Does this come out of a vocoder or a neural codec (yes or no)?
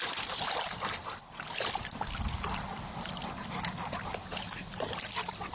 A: no